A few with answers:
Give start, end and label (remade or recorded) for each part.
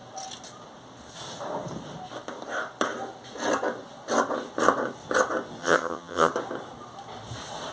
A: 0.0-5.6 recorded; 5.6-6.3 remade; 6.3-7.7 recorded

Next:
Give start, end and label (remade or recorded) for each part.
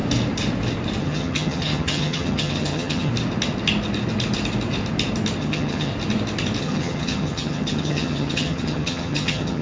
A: 0.0-1.0 recorded; 1.0-3.1 remade; 3.1-5.4 recorded; 5.4-5.9 remade; 5.9-6.6 recorded; 6.6-9.6 remade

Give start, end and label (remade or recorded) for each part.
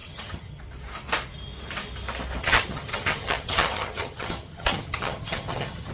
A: 0.0-0.6 remade; 0.6-2.4 recorded; 2.4-5.9 remade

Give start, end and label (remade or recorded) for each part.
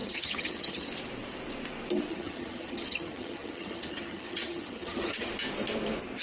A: 0.0-0.9 remade; 0.9-2.1 recorded; 2.1-5.3 remade; 5.3-6.2 recorded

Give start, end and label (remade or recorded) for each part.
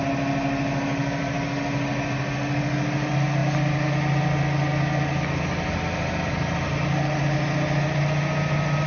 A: 0.0-8.9 recorded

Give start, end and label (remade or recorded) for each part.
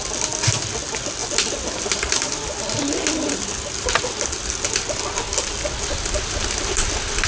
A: 0.0-7.3 recorded